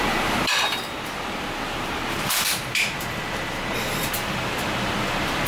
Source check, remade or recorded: remade